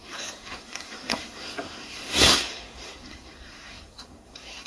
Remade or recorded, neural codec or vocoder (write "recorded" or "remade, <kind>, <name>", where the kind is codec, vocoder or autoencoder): remade, codec, SNAC